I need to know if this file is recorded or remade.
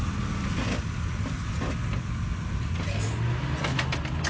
recorded